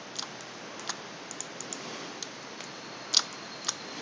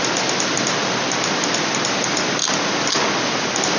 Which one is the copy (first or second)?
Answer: second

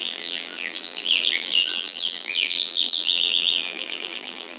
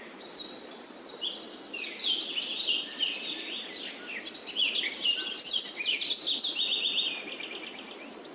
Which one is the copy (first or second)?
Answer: first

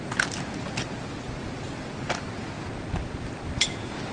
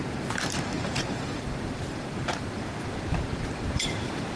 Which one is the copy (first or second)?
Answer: second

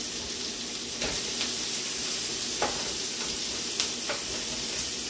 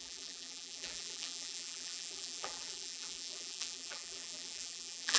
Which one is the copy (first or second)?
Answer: second